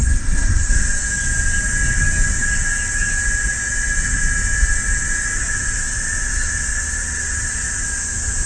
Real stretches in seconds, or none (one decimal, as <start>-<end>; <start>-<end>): 0.7-8.5